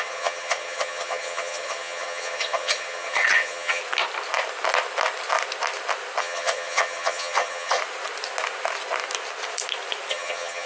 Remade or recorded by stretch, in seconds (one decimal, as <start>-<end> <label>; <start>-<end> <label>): 0.0-3.8 remade; 3.8-6.2 recorded; 6.2-7.8 remade; 7.8-10.1 recorded; 10.1-10.7 remade

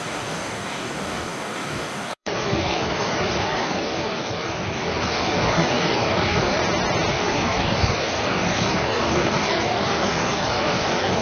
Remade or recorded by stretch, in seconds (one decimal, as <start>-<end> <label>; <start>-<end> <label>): 0.0-6.6 remade; 6.6-7.1 recorded; 7.1-11.2 remade

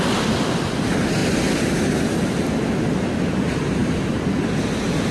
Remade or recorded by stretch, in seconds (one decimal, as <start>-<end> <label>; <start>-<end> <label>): 0.0-5.1 recorded

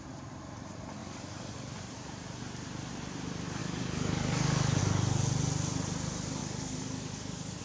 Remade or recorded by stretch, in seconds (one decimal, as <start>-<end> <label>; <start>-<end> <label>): 0.0-1.0 recorded; 1.0-1.5 remade; 1.5-3.6 recorded; 3.6-4.8 remade; 4.8-6.4 recorded; 6.4-7.6 remade

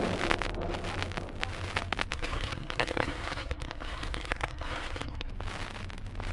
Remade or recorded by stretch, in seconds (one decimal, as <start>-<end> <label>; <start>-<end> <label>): 0.0-2.1 recorded; 2.1-5.3 remade; 5.3-6.3 recorded

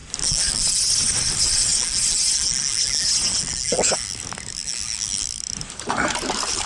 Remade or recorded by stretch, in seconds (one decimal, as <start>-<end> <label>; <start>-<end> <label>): 0.0-1.0 recorded; 1.0-1.7 remade; 1.7-5.7 recorded; 5.7-6.7 remade

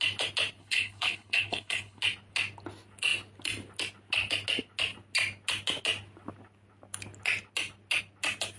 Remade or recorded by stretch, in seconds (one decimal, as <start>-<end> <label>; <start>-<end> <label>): 0.0-0.6 recorded; 0.6-2.0 remade; 2.0-8.6 recorded

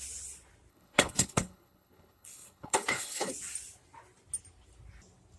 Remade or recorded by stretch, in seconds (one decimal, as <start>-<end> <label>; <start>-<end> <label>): 0.0-0.7 recorded; 0.7-3.3 remade; 3.3-5.4 recorded